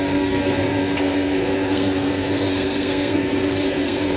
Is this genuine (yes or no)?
no